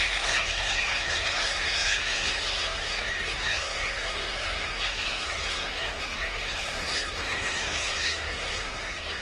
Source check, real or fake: fake